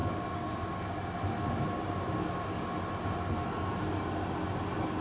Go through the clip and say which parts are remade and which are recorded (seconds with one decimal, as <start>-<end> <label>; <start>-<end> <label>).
0.0-5.0 recorded